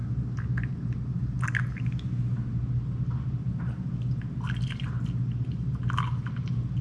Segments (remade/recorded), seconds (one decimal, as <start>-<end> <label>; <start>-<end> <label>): 0.0-6.8 recorded